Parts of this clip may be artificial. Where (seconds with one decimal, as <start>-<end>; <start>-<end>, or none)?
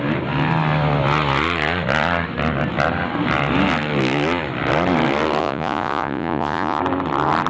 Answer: 5.4-6.8